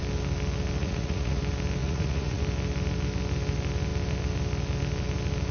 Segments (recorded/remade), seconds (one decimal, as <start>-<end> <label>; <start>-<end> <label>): 0.0-0.8 recorded; 0.8-1.4 remade; 1.4-1.8 recorded; 1.8-2.4 remade; 2.4-5.5 recorded